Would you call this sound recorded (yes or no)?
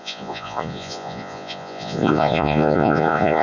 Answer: no